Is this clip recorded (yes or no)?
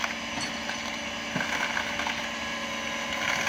yes